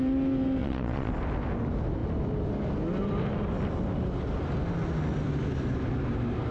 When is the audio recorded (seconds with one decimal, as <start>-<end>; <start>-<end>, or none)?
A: 0.0-0.6; 1.1-6.5